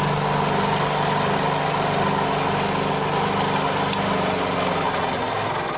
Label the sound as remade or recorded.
recorded